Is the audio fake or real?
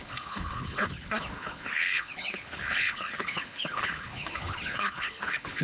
fake